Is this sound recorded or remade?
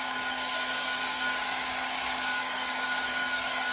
remade